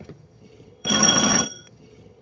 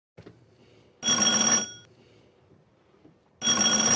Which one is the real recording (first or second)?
second